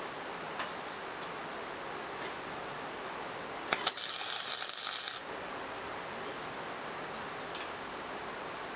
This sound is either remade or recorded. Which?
recorded